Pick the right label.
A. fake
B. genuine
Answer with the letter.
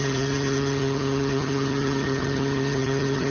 A